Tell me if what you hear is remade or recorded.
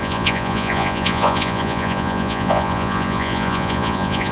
remade